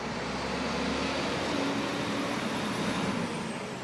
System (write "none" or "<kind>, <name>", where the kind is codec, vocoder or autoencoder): none